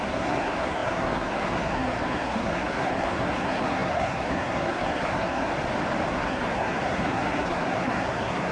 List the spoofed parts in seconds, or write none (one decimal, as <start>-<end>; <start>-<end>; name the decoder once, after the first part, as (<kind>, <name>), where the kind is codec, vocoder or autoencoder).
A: 0.0-5.5 (codec, SNAC); 6.1-8.5